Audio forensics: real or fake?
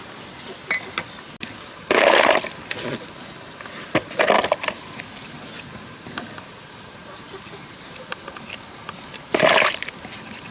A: real